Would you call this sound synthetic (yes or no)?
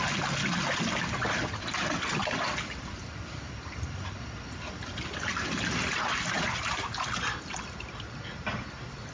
no